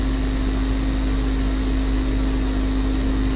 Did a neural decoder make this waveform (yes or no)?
no